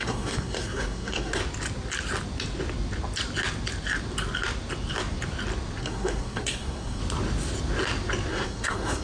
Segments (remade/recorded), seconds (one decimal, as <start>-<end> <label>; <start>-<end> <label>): 0.0-1.4 remade; 1.4-5.8 recorded; 5.8-7.0 remade; 7.0-8.3 recorded; 8.3-9.0 remade